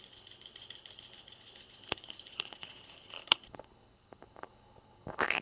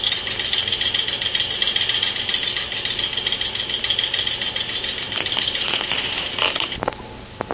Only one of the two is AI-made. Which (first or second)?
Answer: first